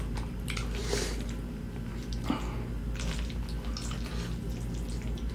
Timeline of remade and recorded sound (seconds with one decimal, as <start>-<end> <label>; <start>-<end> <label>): 0.0-0.8 remade; 0.8-1.5 recorded; 1.5-1.9 remade; 1.9-5.3 recorded